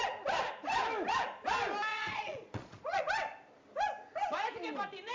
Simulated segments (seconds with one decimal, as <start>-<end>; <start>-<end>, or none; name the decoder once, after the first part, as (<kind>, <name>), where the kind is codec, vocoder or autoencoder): 1.9-3.0 (vocoder, Vocos)